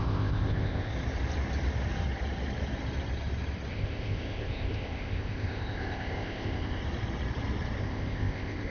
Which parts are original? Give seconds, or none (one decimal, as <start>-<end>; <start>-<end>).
0.9-3.7; 6.8-7.8